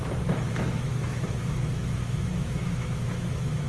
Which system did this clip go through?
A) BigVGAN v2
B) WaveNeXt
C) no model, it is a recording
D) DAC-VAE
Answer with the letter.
D